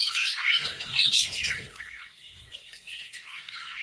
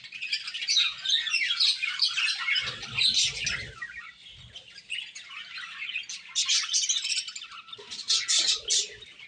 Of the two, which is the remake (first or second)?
first